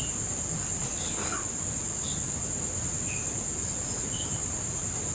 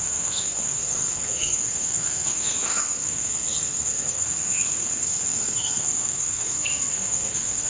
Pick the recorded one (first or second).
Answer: first